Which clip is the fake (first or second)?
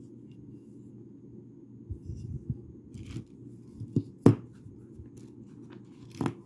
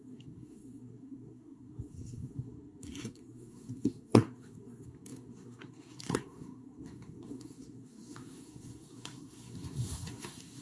second